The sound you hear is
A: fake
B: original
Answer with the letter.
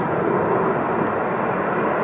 B